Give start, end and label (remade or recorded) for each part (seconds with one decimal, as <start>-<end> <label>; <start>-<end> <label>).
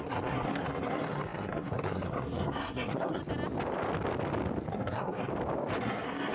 0.0-3.2 remade; 3.2-4.7 recorded; 4.7-5.3 remade; 5.3-5.8 recorded; 5.8-6.3 remade